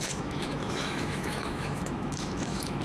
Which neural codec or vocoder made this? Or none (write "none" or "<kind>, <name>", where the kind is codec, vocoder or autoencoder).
autoencoder, DAC-VAE